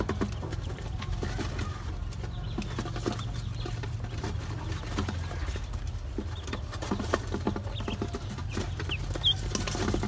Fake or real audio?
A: real